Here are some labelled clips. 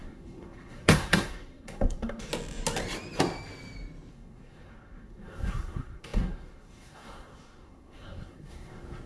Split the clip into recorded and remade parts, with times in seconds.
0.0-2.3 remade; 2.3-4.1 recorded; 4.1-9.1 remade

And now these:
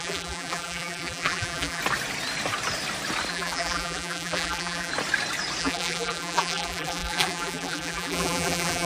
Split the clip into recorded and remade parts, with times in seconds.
0.0-1.8 remade; 1.8-3.3 recorded; 3.3-4.9 remade; 4.9-5.6 recorded; 5.6-8.9 remade

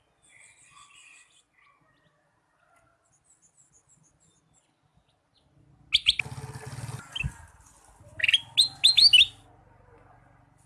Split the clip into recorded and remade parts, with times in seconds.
0.0-10.7 recorded

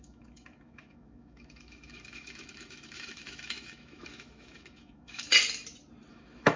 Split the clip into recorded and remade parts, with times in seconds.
0.0-5.3 remade; 5.3-6.1 recorded; 6.1-6.6 remade